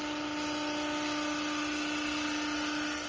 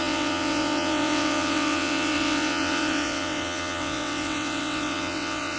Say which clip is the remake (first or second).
second